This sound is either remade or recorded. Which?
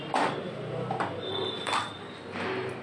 recorded